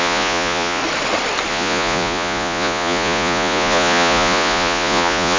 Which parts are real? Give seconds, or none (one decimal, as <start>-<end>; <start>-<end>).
0.8-1.5